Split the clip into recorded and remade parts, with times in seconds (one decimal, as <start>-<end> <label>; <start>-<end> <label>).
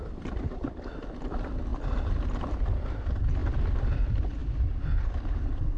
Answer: 0.0-1.7 remade; 1.7-2.7 recorded; 2.7-5.8 remade